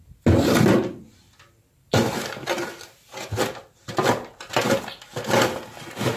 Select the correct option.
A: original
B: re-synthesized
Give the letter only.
A